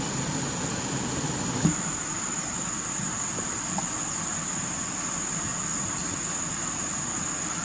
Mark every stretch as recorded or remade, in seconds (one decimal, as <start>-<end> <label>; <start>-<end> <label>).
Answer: 0.0-7.6 recorded

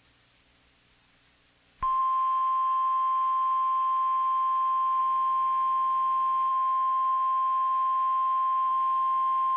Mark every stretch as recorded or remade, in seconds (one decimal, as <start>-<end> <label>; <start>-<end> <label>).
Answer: 0.0-9.6 recorded

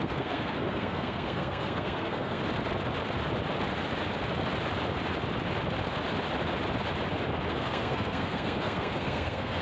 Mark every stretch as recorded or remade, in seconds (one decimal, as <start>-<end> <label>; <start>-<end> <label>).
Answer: 0.0-2.4 remade; 2.4-7.5 recorded; 7.5-9.6 remade

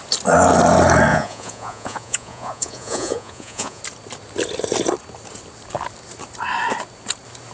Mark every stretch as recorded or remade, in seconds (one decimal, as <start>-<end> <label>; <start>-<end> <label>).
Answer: 0.0-1.1 recorded; 1.1-3.8 remade; 3.8-7.5 recorded

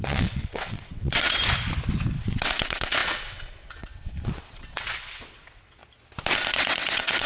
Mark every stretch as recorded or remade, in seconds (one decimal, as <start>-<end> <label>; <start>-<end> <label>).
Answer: 0.0-1.4 remade; 1.4-2.2 recorded; 2.2-5.8 remade; 5.8-6.5 recorded; 6.5-7.3 remade